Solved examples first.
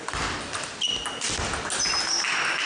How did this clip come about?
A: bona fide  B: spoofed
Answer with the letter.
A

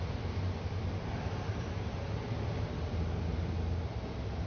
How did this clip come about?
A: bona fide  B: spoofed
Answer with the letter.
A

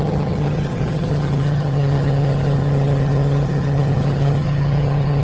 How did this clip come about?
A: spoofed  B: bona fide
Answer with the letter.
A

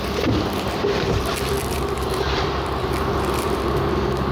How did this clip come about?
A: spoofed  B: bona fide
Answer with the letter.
A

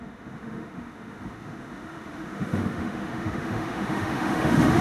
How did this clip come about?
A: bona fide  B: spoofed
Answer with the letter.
B